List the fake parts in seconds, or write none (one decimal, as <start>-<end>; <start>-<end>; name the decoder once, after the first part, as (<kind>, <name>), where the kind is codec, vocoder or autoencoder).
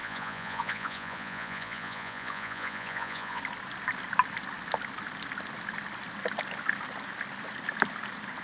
0.0-3.4 (vocoder, Vocos)